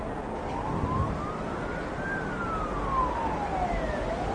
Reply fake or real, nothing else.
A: real